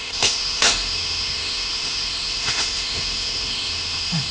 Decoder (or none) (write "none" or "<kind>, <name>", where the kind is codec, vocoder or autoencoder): autoencoder, DAC-VAE